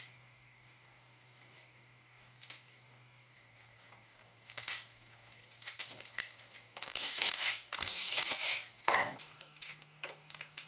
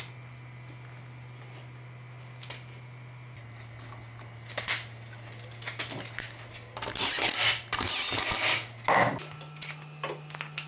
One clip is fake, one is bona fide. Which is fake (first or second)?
first